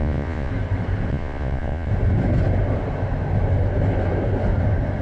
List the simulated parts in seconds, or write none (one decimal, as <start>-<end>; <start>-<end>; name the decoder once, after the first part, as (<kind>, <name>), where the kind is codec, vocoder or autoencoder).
0.0-0.5 (vocoder, Vocos); 1.1-1.9